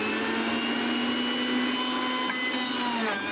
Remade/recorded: recorded